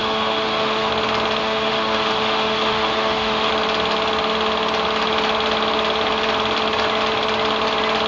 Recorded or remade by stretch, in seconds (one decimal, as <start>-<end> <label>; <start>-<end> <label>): 0.0-0.9 remade; 0.9-1.4 recorded; 1.4-3.5 remade; 3.5-8.1 recorded